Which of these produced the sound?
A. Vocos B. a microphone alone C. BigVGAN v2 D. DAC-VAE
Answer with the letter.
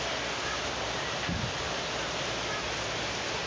B